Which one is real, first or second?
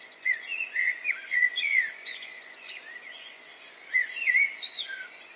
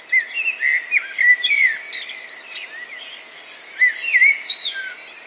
second